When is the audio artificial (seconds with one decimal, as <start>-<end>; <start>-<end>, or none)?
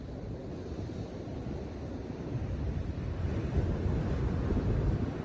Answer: none